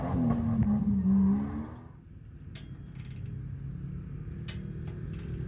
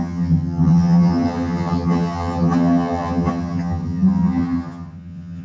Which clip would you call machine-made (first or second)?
second